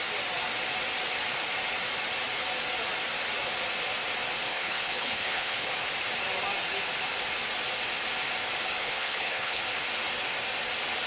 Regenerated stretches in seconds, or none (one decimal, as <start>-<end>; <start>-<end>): 4.5-5.7; 8.8-9.6